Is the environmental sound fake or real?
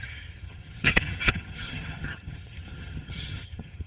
fake